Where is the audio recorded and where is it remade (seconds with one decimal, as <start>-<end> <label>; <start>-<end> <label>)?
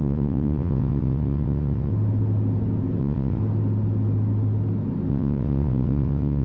0.0-1.9 remade; 1.9-3.0 recorded; 3.0-3.4 remade; 3.4-5.1 recorded; 5.1-6.4 remade